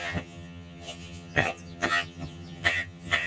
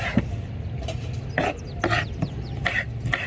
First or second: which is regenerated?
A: first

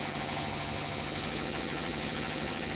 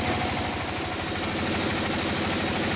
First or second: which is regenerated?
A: first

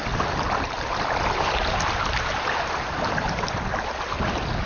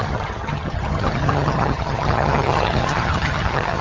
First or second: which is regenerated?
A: second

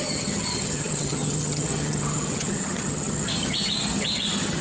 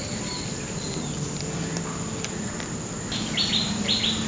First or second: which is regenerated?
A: first